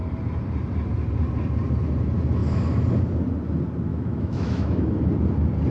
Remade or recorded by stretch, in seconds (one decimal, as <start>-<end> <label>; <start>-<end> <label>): 0.0-3.9 recorded; 3.9-4.9 remade; 4.9-5.7 recorded